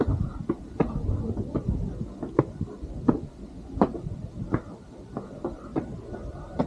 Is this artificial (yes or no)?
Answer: yes